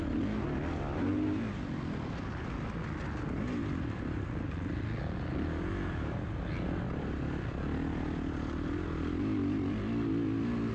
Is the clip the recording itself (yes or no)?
yes